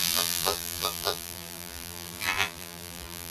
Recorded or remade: remade